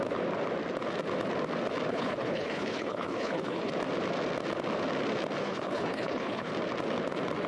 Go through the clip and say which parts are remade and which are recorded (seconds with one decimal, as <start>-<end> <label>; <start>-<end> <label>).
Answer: 0.0-1.9 recorded; 1.9-3.7 remade; 3.7-5.4 recorded; 5.4-6.5 remade; 6.5-7.5 recorded